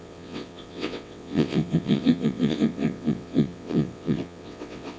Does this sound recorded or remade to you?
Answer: remade